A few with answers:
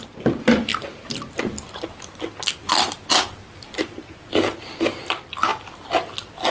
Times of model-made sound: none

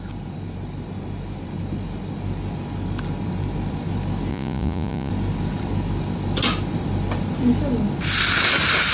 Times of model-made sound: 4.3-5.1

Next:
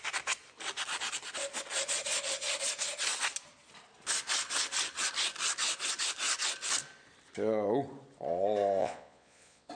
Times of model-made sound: 8.8-9.7

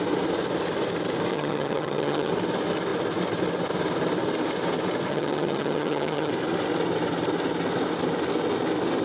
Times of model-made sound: 1.3-2.3; 5.1-6.3

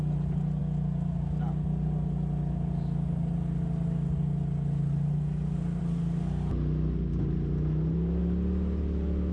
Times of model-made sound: none

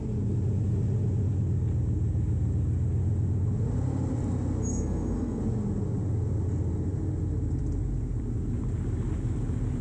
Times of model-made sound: 4.7-5.4

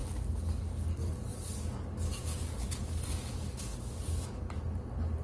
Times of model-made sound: 1.3-4.4

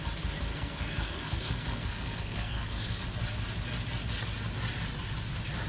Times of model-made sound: 0.5-3.0